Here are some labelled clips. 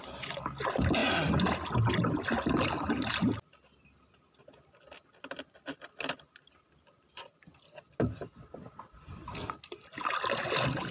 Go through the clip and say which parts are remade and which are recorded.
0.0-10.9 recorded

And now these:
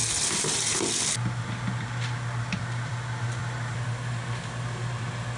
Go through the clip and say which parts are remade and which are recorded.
0.0-5.4 recorded

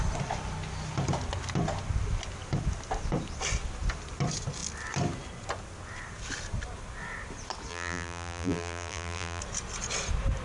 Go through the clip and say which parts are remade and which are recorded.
0.0-7.7 recorded; 7.7-9.4 remade; 9.4-10.4 recorded

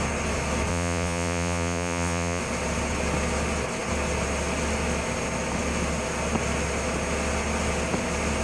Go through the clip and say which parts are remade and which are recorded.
0.0-0.7 recorded; 0.7-2.4 remade; 2.4-8.4 recorded